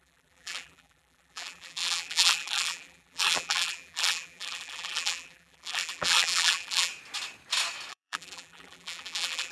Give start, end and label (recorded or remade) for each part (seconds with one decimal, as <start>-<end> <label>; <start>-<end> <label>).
0.0-6.9 remade; 6.9-7.9 recorded; 7.9-9.5 remade